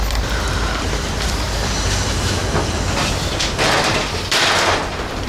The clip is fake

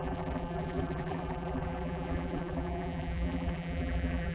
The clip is fake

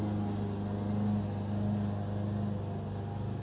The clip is real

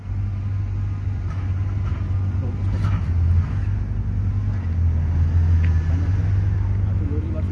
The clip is real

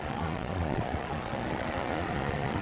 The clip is fake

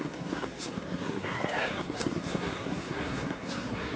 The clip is fake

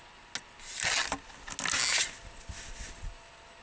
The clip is real